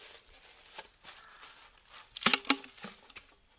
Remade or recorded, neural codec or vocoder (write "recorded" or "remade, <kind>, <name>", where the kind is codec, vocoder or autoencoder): recorded